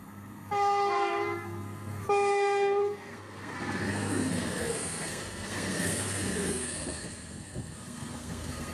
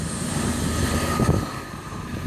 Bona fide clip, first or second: second